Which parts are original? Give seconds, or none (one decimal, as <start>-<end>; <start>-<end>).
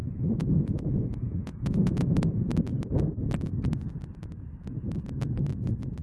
2.4-6.0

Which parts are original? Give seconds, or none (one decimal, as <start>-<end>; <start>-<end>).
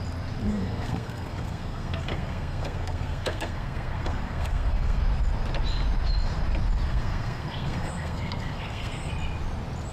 0.0-0.4; 5.0-6.9; 9.1-9.9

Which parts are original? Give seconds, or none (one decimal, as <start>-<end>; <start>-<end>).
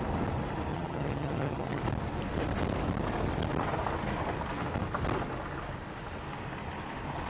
0.0-0.7; 1.8-7.3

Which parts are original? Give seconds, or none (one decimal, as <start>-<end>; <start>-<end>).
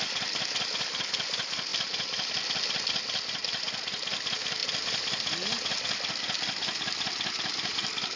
0.0-8.2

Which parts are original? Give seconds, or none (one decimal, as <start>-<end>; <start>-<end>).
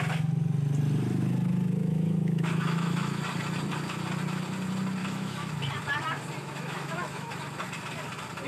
0.0-1.8; 3.2-5.0; 5.5-6.4; 7.3-8.5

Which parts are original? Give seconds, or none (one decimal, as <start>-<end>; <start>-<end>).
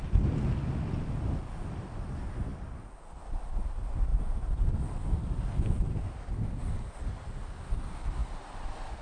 0.0-9.0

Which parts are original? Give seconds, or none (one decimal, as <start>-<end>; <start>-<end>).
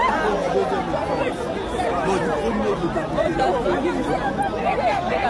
0.0-5.3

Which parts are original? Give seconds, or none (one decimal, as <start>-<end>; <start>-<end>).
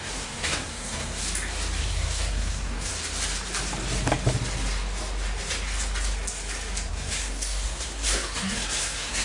1.2-1.8; 2.9-6.9